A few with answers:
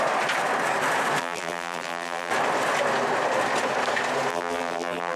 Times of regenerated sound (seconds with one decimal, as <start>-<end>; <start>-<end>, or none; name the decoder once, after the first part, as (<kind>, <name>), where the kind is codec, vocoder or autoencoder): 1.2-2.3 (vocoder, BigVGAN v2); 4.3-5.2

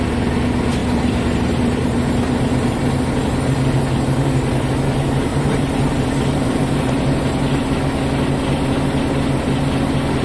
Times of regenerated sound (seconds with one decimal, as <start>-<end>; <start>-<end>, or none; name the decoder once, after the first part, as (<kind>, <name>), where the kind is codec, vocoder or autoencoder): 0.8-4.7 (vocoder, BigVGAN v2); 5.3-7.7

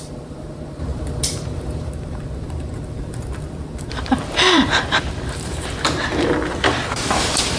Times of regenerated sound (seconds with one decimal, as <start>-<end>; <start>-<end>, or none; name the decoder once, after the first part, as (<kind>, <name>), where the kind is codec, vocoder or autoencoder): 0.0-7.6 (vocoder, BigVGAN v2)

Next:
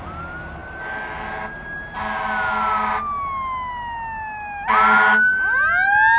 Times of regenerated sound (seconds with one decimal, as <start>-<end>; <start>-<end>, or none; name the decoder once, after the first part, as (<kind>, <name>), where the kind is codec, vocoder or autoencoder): none

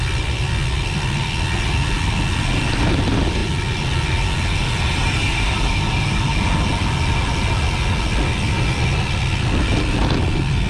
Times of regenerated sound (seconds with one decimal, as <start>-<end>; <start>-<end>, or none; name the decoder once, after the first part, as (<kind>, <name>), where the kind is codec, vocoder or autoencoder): none

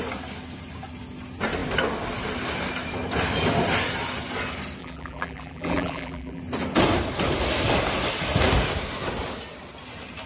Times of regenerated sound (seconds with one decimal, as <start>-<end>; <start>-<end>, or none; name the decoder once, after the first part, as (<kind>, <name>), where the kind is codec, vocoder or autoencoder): 4.8-6.4 (vocoder, BigVGAN v2)

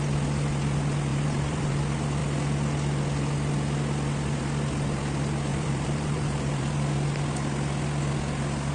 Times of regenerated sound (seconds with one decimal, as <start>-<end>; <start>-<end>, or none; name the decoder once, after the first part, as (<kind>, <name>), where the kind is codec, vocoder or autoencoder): 1.1-1.8 (vocoder, BigVGAN v2); 5.5-6.7